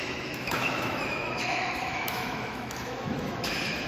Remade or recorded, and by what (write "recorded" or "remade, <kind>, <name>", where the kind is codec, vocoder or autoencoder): remade, autoencoder, DAC-VAE